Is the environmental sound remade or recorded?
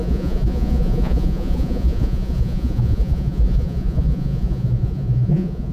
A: remade